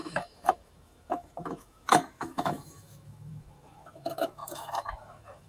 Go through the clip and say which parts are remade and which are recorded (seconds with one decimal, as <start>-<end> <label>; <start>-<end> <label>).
0.0-5.5 remade